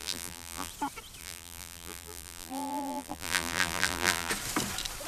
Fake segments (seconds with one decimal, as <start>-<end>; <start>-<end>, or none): 0.0-0.7; 1.2-4.3